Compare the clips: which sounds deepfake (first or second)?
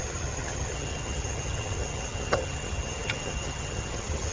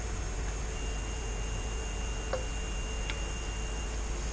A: first